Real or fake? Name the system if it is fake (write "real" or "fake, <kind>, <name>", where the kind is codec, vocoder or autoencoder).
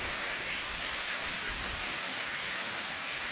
fake, codec, DAC